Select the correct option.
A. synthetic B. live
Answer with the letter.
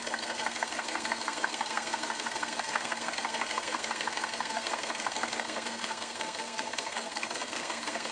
A